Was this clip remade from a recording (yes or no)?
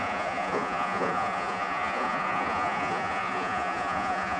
yes